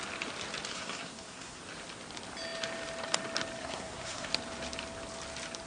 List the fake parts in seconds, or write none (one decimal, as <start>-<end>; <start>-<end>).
0.7-1.6; 3.6-4.3